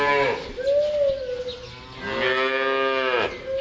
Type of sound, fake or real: real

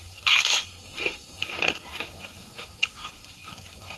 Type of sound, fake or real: fake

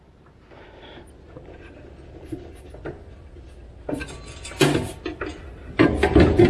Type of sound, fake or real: real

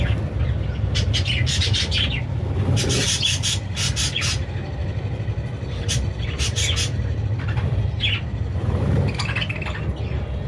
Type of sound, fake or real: fake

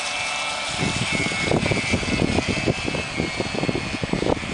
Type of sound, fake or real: real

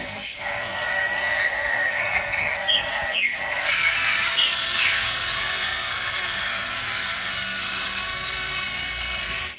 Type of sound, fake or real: fake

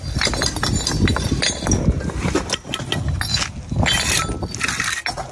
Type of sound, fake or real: real